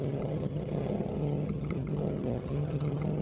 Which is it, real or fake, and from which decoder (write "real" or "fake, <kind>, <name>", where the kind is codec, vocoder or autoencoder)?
fake, vocoder, HiFi-GAN